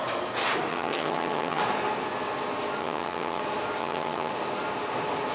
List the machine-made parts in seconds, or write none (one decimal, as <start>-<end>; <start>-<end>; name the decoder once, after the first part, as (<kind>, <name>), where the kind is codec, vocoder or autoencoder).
0.7-1.6 (vocoder, HiFi-GAN); 2.8-3.4; 3.8-4.3